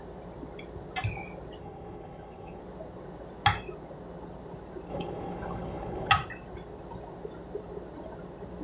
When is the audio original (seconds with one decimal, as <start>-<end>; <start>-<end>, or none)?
0.0-1.6; 2.6-4.9; 6.1-8.6